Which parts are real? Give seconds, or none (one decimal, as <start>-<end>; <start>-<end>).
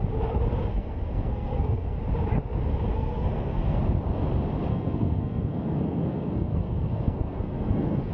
0.0-0.7; 2.0-2.9; 3.8-4.7